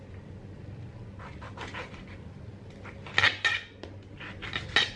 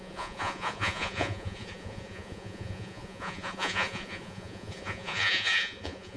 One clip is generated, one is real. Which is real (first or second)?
first